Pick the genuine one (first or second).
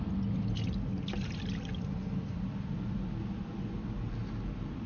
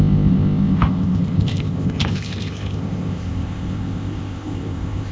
first